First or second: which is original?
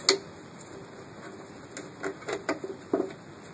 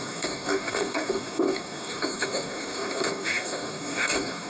first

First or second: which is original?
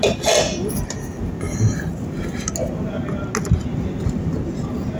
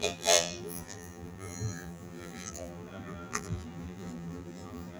first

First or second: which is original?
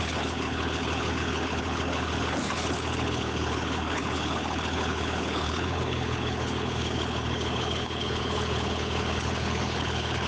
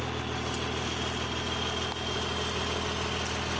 second